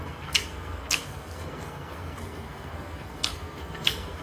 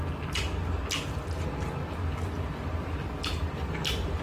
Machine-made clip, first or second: first